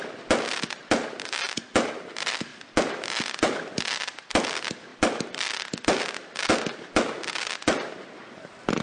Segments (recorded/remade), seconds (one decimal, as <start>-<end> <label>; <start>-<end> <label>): 0.0-8.8 recorded